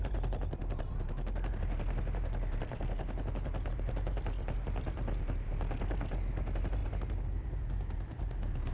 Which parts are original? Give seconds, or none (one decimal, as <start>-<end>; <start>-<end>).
0.0-8.7